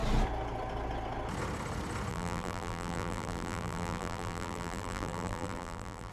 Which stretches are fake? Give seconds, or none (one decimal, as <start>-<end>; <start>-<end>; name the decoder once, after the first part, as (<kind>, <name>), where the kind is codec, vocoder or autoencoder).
2.1-6.1 (vocoder, BigVGAN v2)